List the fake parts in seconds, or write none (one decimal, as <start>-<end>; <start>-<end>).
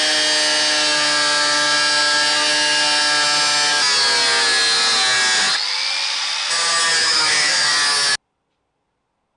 7.0-7.7